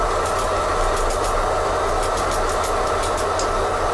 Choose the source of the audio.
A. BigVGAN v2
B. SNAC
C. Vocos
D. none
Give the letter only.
D